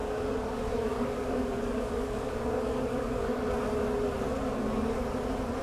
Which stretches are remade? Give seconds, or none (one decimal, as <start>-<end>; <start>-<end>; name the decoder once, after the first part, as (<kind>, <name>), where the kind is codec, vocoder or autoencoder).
0.0-3.4 (codec, DAC)